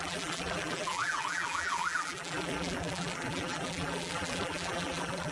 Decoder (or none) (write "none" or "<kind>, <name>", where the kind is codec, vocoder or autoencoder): vocoder, BigVGAN v2